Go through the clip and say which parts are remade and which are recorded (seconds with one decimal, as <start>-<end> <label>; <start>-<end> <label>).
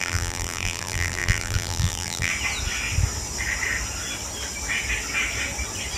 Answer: 0.0-2.3 remade; 2.3-6.0 recorded